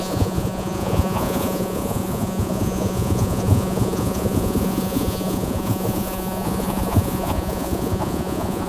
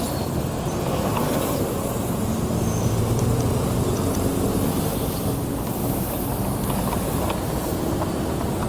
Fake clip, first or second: first